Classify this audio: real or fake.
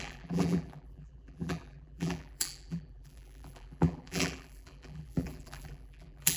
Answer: fake